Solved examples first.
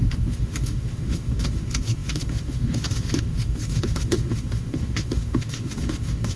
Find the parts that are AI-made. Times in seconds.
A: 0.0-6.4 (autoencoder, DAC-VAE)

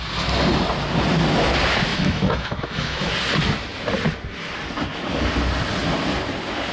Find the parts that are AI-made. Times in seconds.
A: 1.9-3.1 (autoencoder, DAC-VAE)

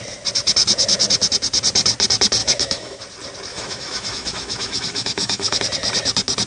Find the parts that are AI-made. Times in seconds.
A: 2.4-3.0 (autoencoder, DAC-VAE); 3.5-5.6

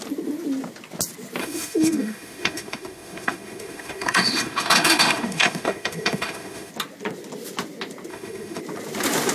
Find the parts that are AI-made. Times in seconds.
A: 1.4-6.7 (autoencoder, DAC-VAE); 8.1-8.6

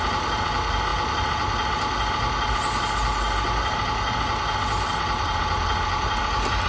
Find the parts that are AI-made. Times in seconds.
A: none

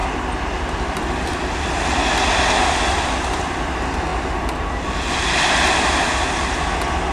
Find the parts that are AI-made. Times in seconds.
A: none

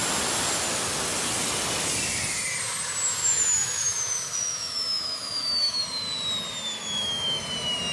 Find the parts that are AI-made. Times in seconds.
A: 3.2-5.8 (autoencoder, DAC-VAE); 6.8-7.4

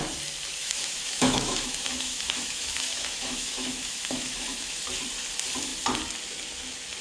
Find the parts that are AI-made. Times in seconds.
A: 0.6-4.8 (autoencoder, DAC-VAE)